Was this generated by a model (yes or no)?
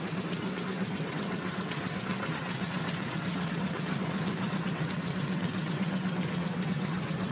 yes